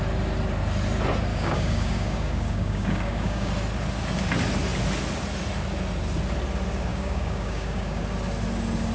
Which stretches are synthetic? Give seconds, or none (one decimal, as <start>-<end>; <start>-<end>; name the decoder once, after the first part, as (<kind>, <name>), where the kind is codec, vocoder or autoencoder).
1.3-3.5 (codec, DAC); 6.9-8.0